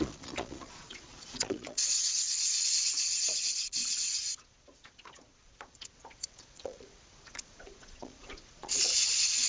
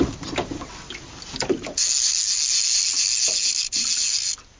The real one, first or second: second